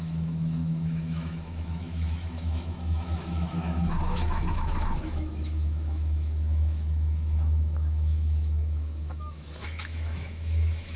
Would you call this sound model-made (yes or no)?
yes